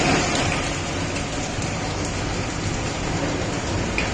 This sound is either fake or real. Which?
real